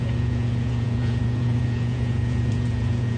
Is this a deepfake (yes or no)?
yes